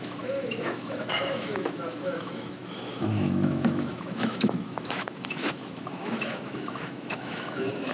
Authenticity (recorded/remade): remade